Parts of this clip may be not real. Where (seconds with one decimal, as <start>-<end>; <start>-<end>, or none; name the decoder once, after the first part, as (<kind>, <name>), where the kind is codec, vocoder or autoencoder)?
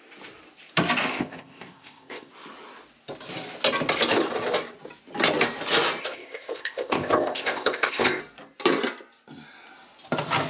1.1-2.3 (codec, ZipCodec); 6.0-8.2